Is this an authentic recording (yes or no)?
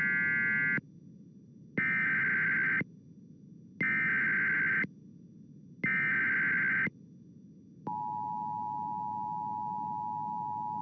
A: yes